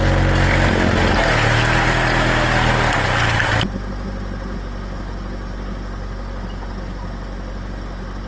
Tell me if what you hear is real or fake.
real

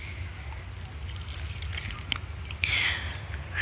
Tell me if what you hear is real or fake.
real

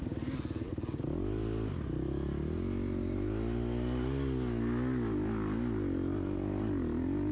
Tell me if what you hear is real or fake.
real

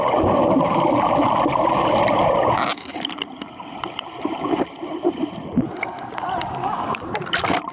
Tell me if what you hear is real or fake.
fake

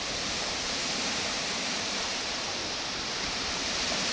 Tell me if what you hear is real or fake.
fake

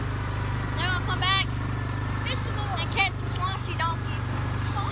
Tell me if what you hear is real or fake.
real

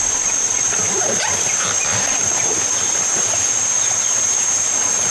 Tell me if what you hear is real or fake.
real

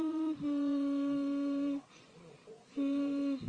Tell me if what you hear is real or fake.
fake